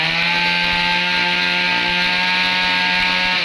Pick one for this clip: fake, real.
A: real